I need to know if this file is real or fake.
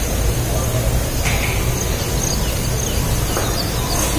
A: real